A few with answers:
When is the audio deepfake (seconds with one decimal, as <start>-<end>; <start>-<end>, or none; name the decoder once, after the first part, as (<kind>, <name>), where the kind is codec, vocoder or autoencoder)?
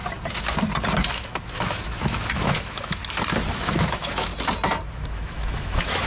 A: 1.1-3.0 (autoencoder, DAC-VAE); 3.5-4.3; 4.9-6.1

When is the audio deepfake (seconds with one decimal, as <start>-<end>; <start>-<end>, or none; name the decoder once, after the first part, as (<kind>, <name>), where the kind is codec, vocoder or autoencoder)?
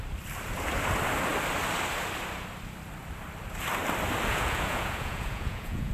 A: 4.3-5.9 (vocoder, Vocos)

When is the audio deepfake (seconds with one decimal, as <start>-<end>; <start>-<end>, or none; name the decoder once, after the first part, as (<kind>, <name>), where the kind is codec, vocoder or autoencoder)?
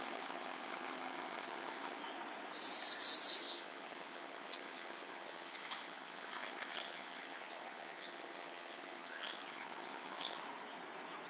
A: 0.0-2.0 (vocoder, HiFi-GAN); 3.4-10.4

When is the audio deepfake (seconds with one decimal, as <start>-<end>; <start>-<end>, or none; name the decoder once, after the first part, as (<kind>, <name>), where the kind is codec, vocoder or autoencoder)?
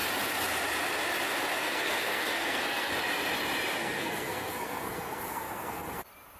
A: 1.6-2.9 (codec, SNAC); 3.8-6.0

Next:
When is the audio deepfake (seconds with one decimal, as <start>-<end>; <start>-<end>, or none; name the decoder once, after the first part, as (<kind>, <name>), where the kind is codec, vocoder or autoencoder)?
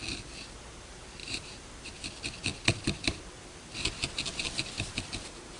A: 1.2-2.0 (vocoder, BigVGAN v2)